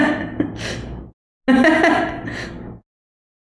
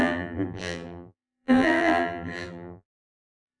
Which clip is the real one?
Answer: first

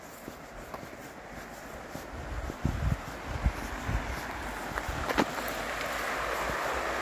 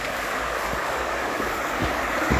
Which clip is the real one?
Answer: first